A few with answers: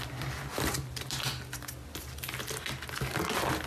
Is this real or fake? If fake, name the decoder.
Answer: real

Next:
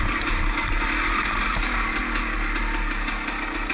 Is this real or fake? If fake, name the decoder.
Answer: real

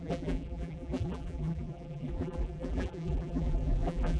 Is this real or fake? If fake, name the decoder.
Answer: fake, vocoder, BigVGAN v2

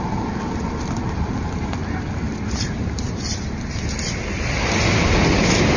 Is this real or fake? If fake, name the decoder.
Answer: real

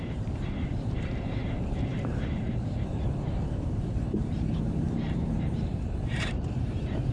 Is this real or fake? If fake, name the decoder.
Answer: fake, vocoder, BigVGAN v2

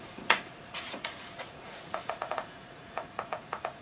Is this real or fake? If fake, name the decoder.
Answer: fake, vocoder, Vocos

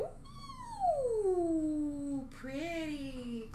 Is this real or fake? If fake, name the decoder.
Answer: fake, autoencoder, DAC-VAE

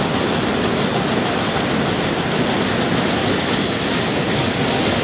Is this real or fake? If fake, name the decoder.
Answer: real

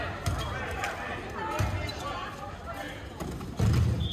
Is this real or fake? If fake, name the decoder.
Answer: real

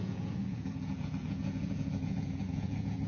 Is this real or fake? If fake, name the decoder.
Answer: fake, vocoder, Vocos